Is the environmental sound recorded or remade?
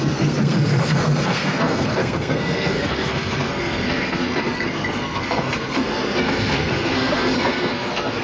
remade